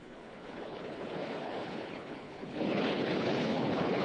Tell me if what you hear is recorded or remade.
remade